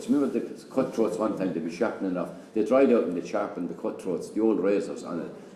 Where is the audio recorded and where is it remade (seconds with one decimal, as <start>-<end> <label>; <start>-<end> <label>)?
0.0-3.4 remade; 3.4-5.6 recorded